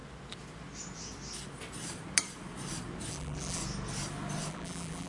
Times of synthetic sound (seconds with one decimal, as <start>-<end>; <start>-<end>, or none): 3.1-3.6; 4.5-5.1